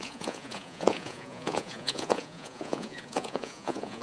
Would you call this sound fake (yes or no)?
yes